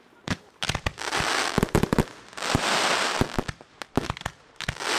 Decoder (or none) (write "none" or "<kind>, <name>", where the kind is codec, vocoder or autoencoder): none